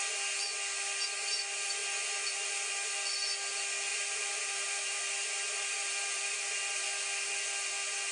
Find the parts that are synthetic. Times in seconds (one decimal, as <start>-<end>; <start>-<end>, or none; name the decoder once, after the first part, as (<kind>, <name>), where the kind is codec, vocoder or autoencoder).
3.9-5.0 (vocoder, BigVGAN v2); 5.4-6.6